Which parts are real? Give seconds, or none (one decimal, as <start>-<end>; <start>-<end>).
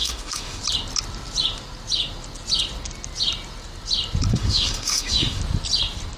0.6-4.3; 5.4-6.2